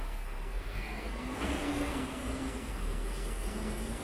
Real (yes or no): no